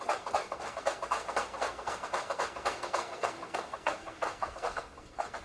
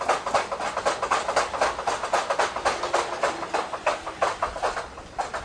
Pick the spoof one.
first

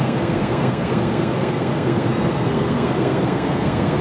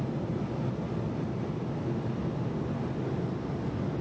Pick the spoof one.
first